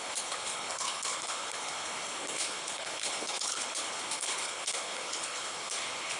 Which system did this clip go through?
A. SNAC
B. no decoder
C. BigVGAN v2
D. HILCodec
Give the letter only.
D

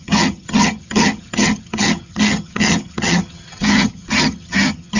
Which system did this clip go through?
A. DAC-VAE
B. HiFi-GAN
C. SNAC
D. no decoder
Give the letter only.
B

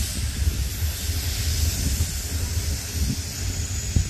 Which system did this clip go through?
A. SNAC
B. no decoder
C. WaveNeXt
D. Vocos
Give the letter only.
B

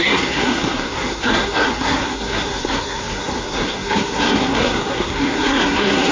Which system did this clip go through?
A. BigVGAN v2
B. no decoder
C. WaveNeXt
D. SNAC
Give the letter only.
D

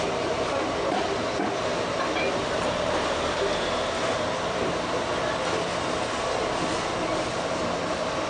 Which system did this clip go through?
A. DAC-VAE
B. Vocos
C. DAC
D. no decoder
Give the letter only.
D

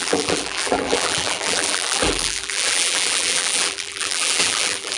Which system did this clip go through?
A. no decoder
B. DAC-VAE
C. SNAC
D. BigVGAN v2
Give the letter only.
D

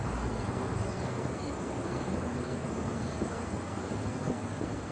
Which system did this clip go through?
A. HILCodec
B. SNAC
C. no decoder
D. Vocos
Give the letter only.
B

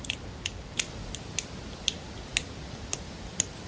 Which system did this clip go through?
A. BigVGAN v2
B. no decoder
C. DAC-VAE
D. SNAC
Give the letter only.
A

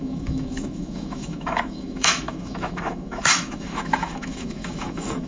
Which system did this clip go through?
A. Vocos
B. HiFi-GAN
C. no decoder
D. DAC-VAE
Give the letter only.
D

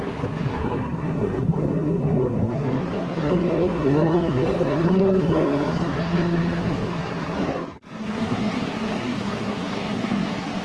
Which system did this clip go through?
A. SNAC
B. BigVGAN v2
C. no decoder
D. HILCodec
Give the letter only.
A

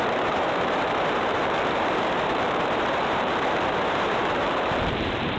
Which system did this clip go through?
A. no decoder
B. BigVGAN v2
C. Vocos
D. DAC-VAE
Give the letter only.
B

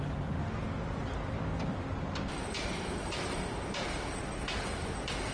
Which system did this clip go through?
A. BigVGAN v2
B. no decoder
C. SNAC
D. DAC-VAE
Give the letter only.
B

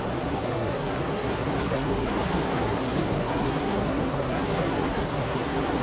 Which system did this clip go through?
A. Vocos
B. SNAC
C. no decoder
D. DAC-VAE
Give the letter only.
B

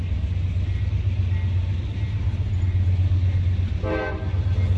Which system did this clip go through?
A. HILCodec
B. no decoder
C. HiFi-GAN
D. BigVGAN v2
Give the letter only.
B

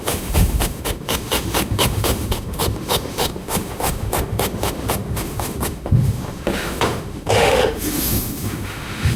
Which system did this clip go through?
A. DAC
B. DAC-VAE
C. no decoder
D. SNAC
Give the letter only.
B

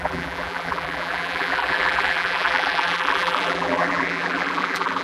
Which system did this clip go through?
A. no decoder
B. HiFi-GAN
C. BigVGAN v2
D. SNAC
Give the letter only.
C